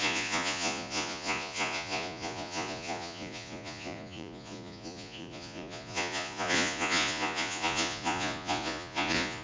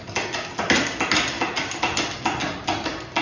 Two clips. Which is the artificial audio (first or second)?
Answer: first